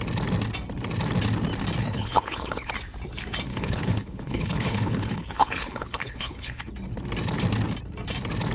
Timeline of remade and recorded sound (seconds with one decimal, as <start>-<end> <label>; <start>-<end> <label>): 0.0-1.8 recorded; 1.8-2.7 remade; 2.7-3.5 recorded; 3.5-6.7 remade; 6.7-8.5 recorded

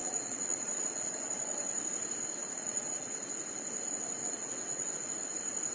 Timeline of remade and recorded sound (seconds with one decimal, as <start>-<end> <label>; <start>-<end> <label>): 0.0-1.3 remade; 1.3-2.4 recorded; 2.4-3.3 remade; 3.3-4.2 recorded; 4.2-5.0 remade; 5.0-5.7 recorded

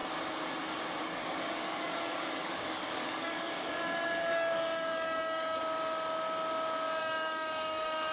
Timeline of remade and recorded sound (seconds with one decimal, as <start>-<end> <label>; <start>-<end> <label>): 0.0-1.0 recorded; 1.0-5.6 remade; 5.6-7.0 recorded; 7.0-8.1 remade

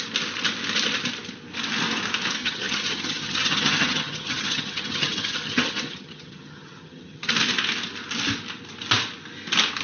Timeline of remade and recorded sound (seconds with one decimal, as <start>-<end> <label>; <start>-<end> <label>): 0.0-2.4 recorded; 2.4-7.3 remade; 7.3-9.8 recorded